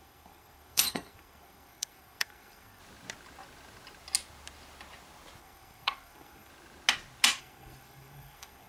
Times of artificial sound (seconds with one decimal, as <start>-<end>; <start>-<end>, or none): 0.0-2.8; 5.4-6.5; 7.4-8.7